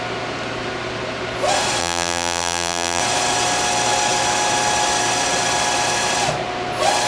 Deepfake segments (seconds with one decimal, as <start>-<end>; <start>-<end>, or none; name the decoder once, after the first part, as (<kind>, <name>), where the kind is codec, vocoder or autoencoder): 1.8-3.0 (vocoder, BigVGAN v2)